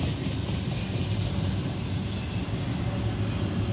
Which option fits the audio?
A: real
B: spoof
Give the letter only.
A